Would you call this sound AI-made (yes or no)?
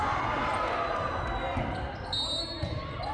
no